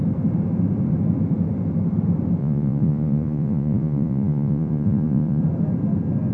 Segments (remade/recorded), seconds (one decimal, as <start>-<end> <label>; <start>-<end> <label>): 0.0-2.4 recorded; 2.4-5.4 remade; 5.4-6.3 recorded